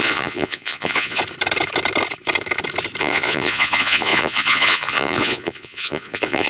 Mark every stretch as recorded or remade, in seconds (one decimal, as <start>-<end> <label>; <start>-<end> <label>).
0.0-1.2 remade; 1.2-3.0 recorded; 3.0-6.5 remade